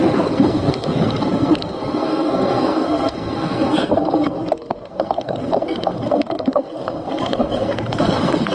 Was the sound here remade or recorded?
remade